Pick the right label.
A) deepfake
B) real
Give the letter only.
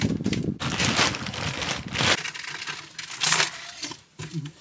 B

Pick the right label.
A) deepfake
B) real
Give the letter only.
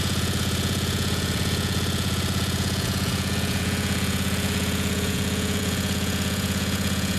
A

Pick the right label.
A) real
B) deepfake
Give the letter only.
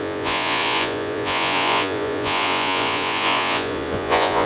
B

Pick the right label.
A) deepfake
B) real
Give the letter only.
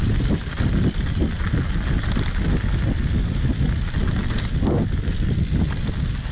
B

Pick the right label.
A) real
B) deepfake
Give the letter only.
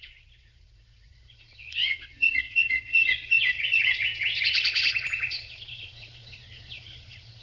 B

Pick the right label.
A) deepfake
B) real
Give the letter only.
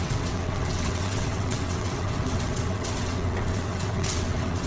A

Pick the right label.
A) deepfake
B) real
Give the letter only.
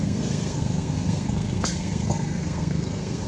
A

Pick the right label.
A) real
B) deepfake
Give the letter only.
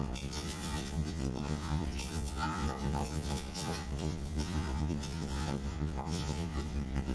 B